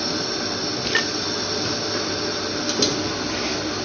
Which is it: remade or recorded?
recorded